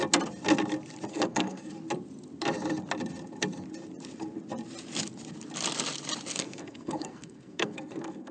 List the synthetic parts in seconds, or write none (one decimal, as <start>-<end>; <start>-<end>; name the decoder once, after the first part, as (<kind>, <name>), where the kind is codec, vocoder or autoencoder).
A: 1.1-1.7 (codec, SNAC); 6.3-8.3